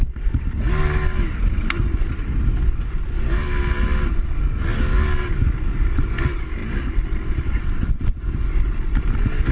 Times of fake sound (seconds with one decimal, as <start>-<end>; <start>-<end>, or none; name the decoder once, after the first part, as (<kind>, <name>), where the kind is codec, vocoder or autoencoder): none